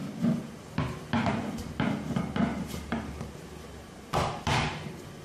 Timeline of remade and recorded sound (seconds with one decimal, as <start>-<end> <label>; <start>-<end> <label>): 0.0-2.5 recorded; 2.5-4.4 remade; 4.4-5.2 recorded